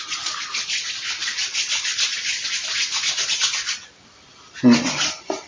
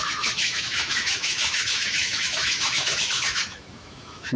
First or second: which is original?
first